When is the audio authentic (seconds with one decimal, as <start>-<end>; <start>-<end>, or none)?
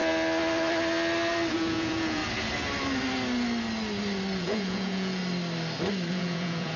0.0-1.5; 2.2-4.4; 5.2-6.1